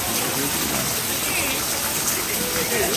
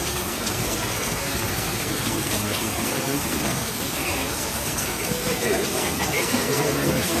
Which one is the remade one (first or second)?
second